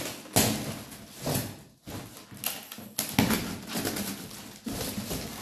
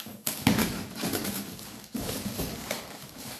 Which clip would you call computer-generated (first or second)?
second